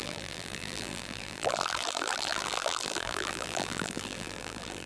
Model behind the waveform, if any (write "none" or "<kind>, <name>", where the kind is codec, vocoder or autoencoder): vocoder, BigVGAN v2